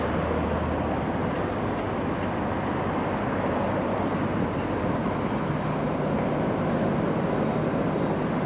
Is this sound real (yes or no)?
yes